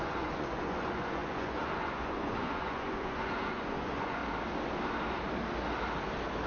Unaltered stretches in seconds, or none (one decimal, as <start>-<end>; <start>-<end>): 4.2-6.5

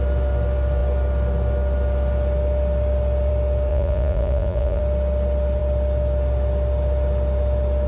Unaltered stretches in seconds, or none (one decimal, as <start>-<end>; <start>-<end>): 0.0-3.7; 4.8-7.9

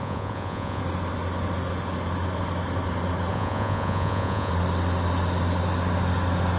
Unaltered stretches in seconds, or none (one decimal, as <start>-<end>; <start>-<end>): 0.8-3.3; 4.5-6.6

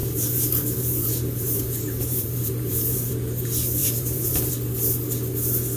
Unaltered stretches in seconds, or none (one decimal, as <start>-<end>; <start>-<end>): 3.1-3.8; 4.5-5.8

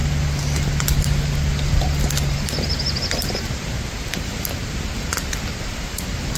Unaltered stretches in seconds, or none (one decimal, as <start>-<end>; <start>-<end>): 0.0-6.4

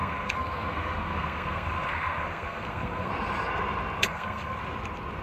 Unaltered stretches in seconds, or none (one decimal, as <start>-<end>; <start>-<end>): 3.1-4.0; 4.6-5.2